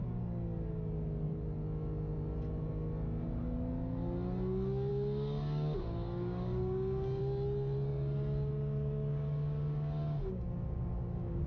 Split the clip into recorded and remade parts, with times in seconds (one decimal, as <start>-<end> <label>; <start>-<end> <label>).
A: 0.0-4.9 recorded; 4.9-7.2 remade; 7.2-7.9 recorded; 7.9-11.5 remade